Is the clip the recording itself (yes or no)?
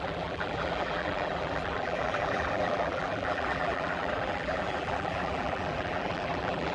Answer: no